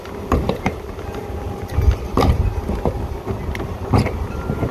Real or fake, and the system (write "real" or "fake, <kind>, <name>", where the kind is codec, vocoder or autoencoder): fake, vocoder, BigVGAN v2